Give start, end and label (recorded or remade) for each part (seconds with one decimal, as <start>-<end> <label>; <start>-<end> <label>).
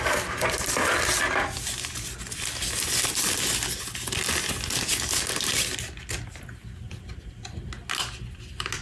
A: 0.0-8.8 recorded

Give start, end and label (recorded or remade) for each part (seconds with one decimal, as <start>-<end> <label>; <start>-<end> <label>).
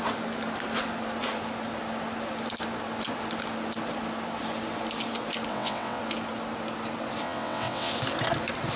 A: 0.0-5.5 recorded; 5.5-6.0 remade; 6.0-7.2 recorded; 7.2-7.9 remade; 7.9-8.8 recorded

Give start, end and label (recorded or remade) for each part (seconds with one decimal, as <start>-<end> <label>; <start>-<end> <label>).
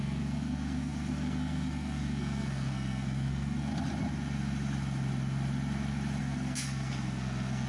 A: 0.0-3.7 remade; 3.7-6.2 recorded; 6.2-7.7 remade